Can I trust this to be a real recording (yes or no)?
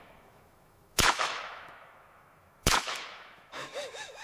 no